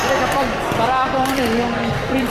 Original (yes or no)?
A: yes